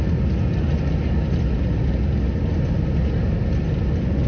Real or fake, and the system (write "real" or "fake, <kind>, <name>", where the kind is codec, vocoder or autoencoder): real